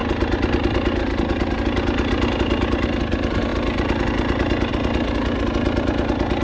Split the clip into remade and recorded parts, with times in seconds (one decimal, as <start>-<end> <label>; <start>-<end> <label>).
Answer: 0.0-6.4 recorded